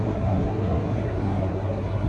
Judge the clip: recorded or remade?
remade